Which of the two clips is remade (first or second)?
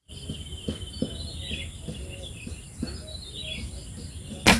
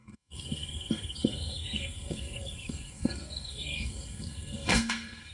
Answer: second